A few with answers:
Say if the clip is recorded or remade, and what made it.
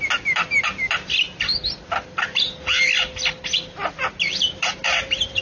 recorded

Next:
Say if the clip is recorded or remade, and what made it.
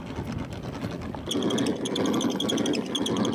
recorded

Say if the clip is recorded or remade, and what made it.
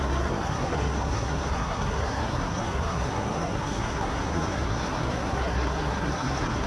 remade, codec, SNAC